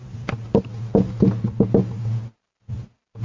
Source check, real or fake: real